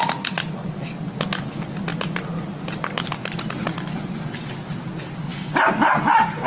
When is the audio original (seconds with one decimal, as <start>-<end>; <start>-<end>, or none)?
0.0-6.5